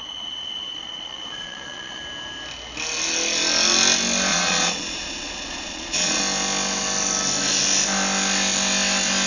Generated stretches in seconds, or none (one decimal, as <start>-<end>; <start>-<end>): 0.0-2.0; 4.3-6.2